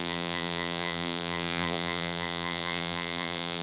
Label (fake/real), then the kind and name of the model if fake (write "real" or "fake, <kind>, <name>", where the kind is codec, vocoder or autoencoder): fake, vocoder, BigVGAN v2